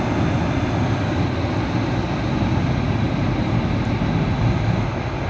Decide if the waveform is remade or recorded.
recorded